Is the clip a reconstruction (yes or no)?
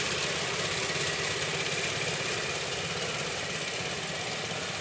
no